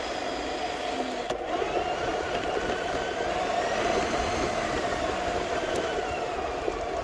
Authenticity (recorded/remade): recorded